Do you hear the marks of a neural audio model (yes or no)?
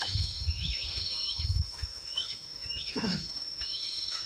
yes